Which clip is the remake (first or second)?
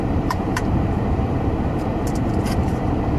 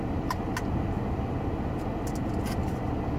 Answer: first